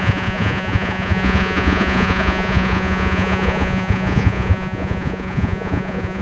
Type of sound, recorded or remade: remade